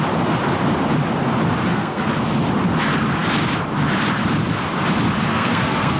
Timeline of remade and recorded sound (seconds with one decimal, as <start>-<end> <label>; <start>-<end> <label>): 0.0-1.7 recorded; 1.7-2.2 remade; 2.2-5.3 recorded; 5.3-6.0 remade